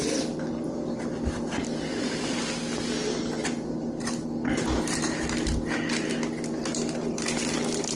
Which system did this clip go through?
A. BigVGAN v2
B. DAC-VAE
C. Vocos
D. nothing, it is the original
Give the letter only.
D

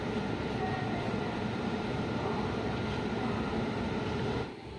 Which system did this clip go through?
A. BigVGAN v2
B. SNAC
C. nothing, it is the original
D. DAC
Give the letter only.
A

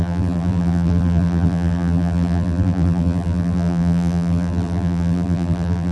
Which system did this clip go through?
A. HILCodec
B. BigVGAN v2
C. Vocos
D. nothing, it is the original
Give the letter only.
B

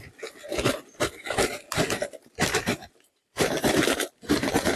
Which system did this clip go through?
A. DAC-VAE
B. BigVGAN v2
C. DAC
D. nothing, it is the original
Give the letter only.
D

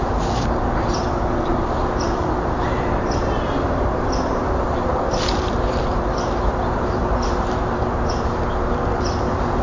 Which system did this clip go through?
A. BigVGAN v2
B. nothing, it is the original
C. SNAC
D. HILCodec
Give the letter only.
A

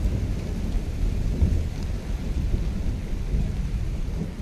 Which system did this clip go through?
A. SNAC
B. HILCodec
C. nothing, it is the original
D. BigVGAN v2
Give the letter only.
C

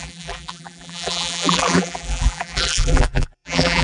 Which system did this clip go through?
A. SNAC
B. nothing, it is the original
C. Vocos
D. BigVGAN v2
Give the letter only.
D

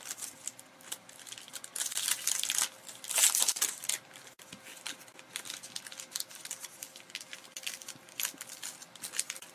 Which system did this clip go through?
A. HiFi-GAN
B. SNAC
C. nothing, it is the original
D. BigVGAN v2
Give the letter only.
C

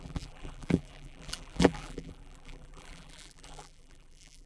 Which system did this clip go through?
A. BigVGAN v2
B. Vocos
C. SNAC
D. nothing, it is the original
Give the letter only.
A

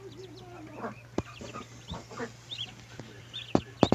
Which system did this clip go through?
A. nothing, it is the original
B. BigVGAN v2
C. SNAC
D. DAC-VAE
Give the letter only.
A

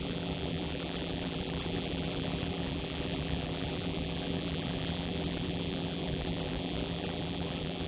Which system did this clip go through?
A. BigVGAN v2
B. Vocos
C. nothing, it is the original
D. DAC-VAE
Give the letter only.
A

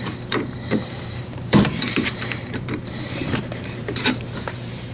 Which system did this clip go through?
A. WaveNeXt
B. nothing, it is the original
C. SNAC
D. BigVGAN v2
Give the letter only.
D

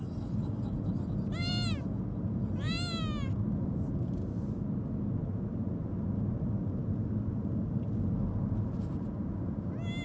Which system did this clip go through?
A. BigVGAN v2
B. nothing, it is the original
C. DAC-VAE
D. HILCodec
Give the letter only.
B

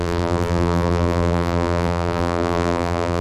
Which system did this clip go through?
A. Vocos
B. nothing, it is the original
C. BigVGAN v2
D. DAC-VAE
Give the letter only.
C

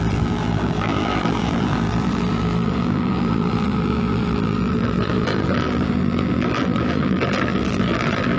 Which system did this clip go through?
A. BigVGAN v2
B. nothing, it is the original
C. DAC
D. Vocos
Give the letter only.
A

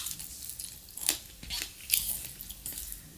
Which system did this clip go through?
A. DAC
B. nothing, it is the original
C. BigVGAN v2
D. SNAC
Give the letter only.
B